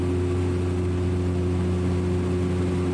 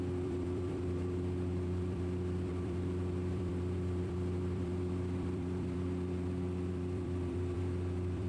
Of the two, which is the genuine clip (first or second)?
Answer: first